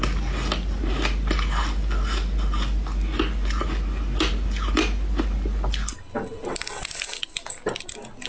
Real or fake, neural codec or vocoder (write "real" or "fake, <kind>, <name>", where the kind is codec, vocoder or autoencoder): real